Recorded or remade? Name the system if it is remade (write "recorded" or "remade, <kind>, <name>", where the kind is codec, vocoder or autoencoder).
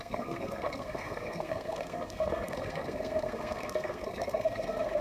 remade, codec, SNAC